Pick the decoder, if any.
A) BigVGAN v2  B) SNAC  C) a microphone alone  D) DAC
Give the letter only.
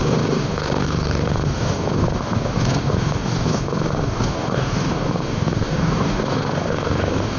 D